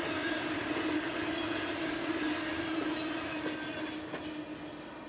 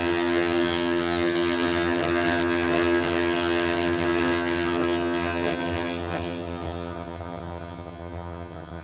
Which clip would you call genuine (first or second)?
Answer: first